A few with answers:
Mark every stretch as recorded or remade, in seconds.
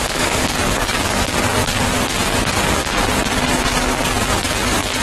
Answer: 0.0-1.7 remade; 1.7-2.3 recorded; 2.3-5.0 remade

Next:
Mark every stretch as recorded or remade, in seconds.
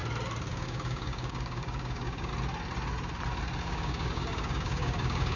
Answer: 0.0-0.5 recorded; 0.5-2.3 remade; 2.3-3.6 recorded; 3.6-5.4 remade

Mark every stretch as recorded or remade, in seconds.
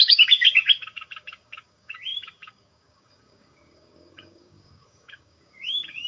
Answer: 0.0-6.1 remade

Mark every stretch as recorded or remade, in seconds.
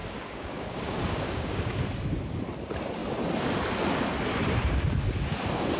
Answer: 0.0-1.8 remade; 1.8-5.8 recorded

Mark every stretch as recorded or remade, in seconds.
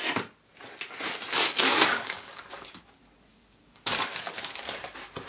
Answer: 0.0-1.3 recorded; 1.3-2.8 remade; 2.8-3.3 recorded; 3.3-4.4 remade; 4.4-5.3 recorded